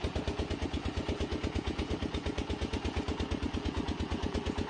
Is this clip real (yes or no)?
no